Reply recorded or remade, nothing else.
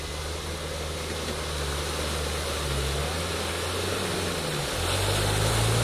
recorded